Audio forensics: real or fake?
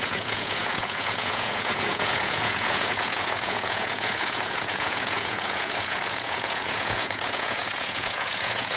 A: fake